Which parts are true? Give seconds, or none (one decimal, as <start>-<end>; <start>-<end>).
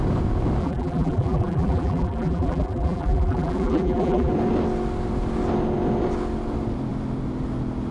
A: 0.0-0.6; 4.3-7.9